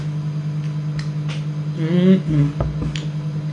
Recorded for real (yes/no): yes